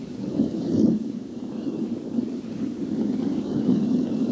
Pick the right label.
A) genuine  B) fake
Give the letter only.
B